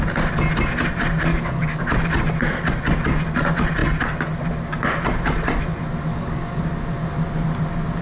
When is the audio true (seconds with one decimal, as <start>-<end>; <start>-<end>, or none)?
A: 0.0-1.3; 1.8-6.1; 6.6-8.0